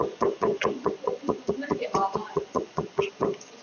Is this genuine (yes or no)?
no